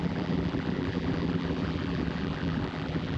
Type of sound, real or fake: fake